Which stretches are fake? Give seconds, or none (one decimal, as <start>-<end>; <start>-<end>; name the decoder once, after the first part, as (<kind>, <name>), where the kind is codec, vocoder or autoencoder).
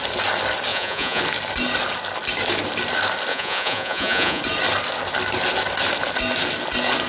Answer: 0.7-1.2 (vocoder, Vocos); 3.3-4.4